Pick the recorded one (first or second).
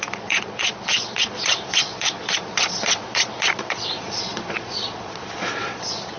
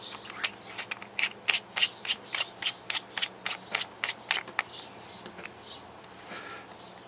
second